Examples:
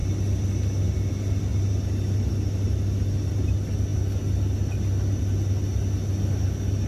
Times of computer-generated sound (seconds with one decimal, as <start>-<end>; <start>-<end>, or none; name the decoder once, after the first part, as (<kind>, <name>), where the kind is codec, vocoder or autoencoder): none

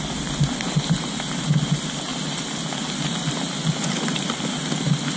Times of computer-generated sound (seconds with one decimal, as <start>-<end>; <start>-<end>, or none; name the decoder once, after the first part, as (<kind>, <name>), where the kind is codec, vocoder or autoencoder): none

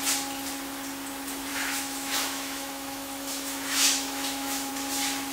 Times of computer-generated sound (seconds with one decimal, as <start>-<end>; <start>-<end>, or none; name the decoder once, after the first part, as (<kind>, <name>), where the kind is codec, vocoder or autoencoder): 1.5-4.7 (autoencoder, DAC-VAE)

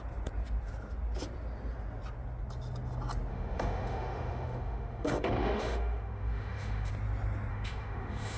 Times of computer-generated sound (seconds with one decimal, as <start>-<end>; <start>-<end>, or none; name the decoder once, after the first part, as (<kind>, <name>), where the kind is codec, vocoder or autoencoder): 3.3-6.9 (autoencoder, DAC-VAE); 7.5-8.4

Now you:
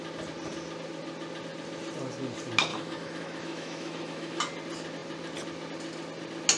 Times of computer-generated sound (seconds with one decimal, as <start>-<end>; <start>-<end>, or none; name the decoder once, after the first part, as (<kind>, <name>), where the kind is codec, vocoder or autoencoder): 2.7-4.4 (autoencoder, DAC-VAE)

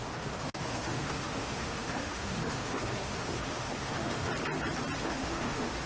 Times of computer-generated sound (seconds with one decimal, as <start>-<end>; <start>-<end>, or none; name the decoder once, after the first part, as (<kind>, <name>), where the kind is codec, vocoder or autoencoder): 0.0-4.3 (autoencoder, DAC-VAE); 5.0-5.9

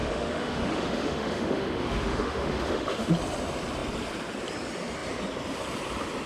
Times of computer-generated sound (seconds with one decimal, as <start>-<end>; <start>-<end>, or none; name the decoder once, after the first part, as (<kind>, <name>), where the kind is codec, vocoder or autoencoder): 0.0-3.1 (autoencoder, DAC-VAE)

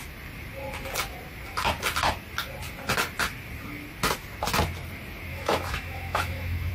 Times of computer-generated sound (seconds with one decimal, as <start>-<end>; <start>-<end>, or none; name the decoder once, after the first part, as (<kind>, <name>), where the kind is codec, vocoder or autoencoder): 5.3-6.7 (autoencoder, DAC-VAE)